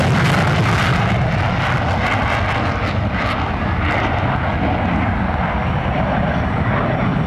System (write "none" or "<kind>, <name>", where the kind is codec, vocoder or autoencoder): none